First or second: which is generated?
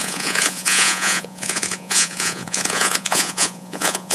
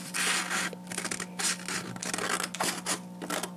first